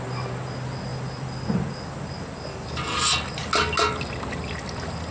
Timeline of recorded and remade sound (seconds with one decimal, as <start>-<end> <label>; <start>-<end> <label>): 0.0-5.1 recorded